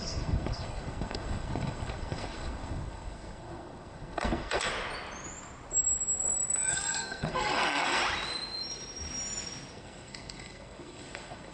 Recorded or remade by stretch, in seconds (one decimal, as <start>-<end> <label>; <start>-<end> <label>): 0.0-4.7 remade; 4.7-6.7 recorded; 6.7-8.0 remade; 8.0-9.7 recorded; 9.7-11.5 remade